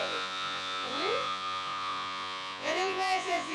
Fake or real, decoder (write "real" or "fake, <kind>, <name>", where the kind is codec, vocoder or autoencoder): fake, vocoder, Vocos